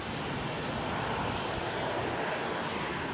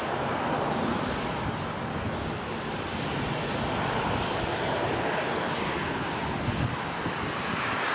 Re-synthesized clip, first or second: second